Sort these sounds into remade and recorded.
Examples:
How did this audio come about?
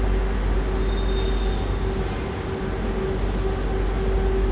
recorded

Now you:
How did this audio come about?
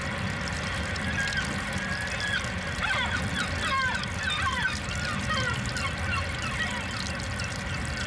recorded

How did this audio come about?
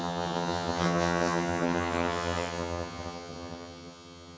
remade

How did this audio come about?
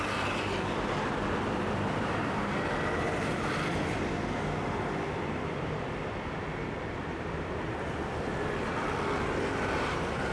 remade